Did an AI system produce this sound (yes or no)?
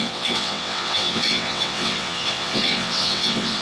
yes